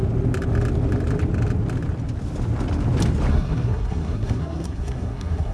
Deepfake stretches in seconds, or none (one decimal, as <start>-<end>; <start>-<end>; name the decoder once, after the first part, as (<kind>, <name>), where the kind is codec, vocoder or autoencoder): 3.3-5.5 (codec, SNAC)